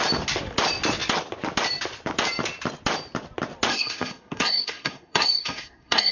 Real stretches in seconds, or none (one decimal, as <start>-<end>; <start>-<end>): 0.0-3.7